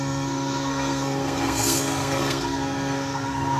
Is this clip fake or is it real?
fake